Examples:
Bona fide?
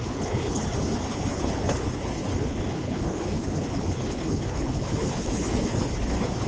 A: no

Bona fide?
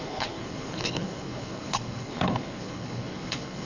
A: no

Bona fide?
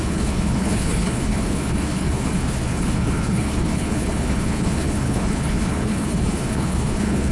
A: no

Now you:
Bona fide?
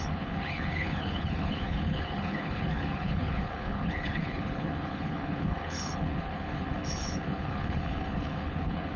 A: no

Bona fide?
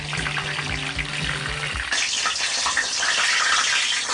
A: yes